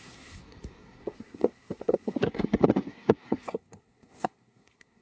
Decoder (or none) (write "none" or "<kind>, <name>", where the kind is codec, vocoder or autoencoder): codec, SNAC